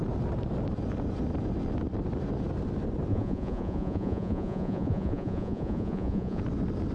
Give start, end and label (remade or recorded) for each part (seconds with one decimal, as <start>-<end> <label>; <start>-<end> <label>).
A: 0.0-3.1 recorded; 3.1-6.4 remade; 6.4-6.9 recorded